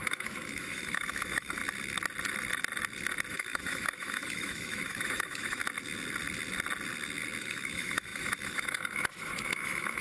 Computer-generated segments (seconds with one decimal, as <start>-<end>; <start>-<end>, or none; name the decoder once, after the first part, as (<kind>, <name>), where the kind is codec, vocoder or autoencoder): 0.0-1.6 (autoencoder, DAC-VAE); 3.3-5.6; 7.4-10.0